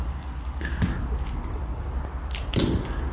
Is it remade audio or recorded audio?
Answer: recorded